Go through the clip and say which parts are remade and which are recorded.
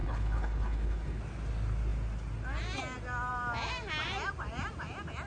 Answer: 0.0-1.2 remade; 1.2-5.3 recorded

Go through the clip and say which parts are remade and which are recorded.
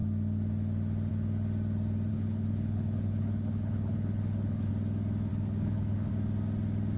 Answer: 0.0-2.1 recorded; 2.1-4.7 remade; 4.7-5.3 recorded; 5.3-6.1 remade; 6.1-7.0 recorded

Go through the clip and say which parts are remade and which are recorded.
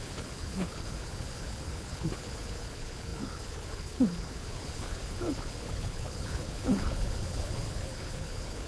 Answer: 0.0-8.7 remade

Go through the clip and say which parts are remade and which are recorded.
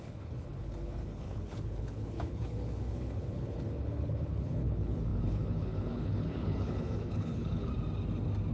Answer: 0.0-7.7 remade; 7.7-8.5 recorded